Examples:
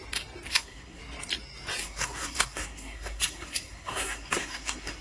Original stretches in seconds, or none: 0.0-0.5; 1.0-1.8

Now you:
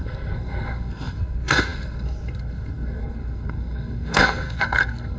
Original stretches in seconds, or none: none

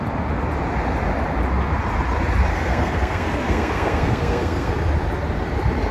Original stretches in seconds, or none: 0.0-2.5; 4.7-5.9

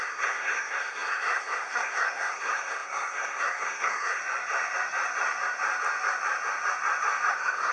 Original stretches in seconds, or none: 4.2-7.3

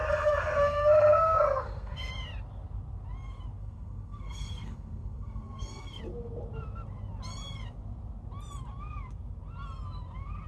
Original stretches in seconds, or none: 2.1-3.6; 6.0-10.5

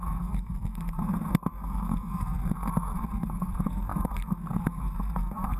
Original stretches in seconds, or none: none

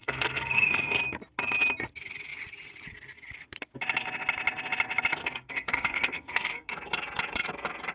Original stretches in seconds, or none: 1.0-5.2; 6.7-7.9

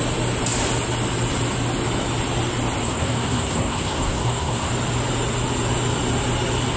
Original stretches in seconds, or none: 0.0-2.8; 4.7-6.8